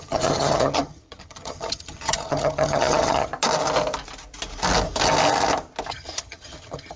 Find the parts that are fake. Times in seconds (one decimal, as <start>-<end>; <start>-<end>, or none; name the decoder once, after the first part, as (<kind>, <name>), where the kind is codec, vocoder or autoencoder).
0.0-3.3 (vocoder, HiFi-GAN); 5.9-7.0